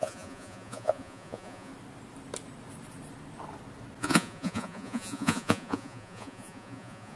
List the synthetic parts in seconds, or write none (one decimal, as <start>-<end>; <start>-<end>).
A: 0.0-1.7; 4.0-7.2